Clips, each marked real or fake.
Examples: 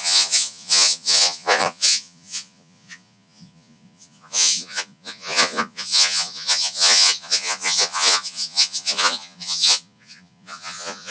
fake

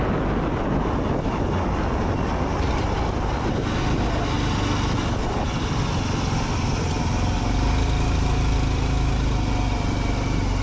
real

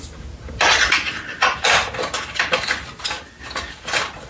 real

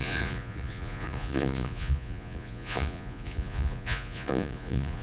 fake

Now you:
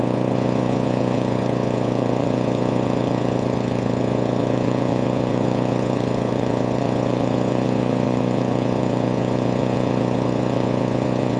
fake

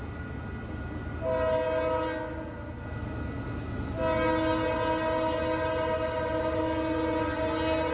real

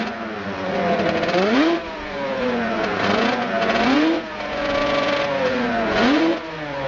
fake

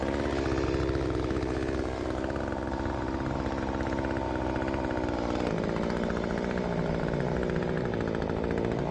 real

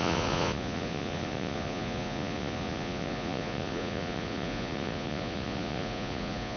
fake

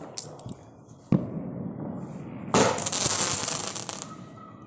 real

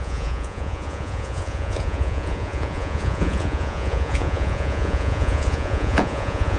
fake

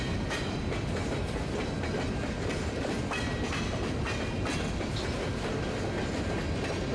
real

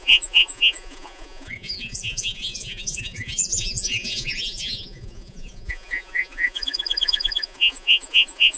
fake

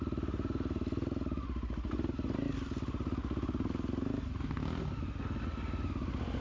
real